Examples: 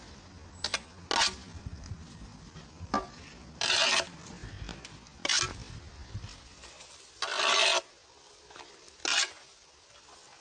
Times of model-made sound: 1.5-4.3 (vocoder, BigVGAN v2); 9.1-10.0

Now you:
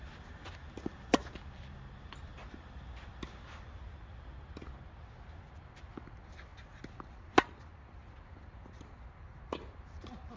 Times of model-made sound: none

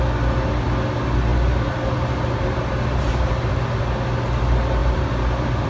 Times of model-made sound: 1.3-3.3 (vocoder, BigVGAN v2); 4.8-5.7

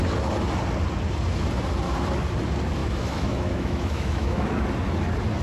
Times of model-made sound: 2.8-4.5 (autoencoder, DAC-VAE)

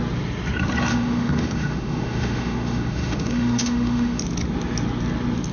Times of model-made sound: 0.9-4.2 (autoencoder, DAC-VAE)

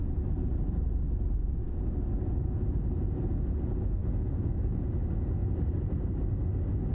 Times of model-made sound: 4.0-4.9 (vocoder, BigVGAN v2); 5.4-6.1

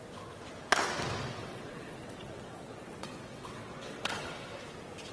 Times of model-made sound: 1.4-4.5 (vocoder, WaveNeXt)

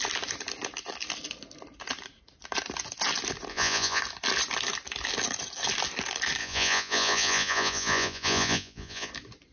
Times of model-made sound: 3.5-4.0 (vocoder, Vocos); 6.4-9.1